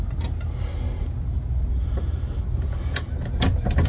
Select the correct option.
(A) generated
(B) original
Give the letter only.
B